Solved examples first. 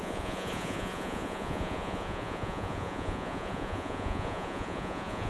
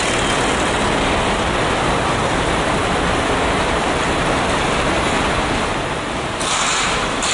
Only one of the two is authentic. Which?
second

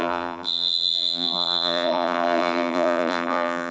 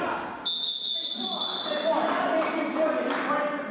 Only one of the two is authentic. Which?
second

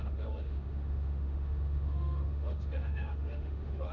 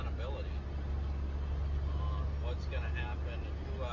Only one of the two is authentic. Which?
second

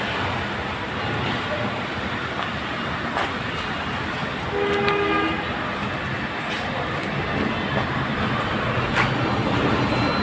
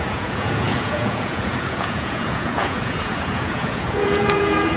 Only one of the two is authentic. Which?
first